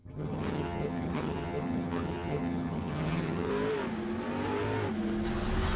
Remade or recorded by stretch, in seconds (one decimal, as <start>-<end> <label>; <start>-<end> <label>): 0.0-3.5 remade; 3.5-5.8 recorded